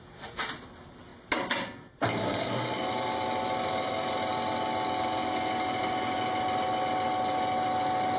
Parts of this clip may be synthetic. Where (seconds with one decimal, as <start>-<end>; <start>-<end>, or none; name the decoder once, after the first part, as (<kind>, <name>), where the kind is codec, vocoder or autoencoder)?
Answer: none